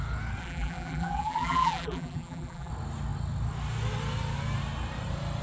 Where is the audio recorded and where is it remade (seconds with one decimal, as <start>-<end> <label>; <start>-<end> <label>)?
0.0-0.4 recorded; 0.4-2.7 remade; 2.7-5.4 recorded